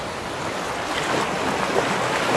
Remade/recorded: recorded